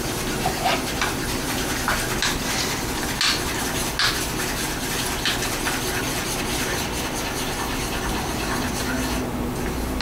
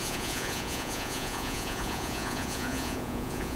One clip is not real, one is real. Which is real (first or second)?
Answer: first